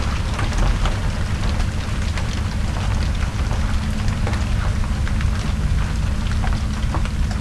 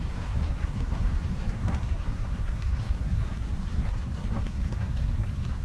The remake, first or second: second